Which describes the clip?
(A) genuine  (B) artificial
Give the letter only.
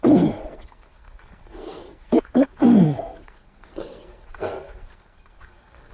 B